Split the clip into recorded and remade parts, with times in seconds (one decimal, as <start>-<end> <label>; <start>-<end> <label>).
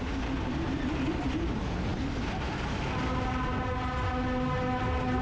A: 0.0-5.2 recorded